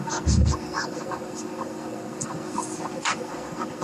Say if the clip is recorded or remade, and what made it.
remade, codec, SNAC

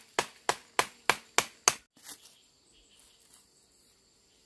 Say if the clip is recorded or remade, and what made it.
recorded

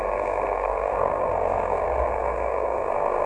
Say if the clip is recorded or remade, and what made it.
remade, codec, SNAC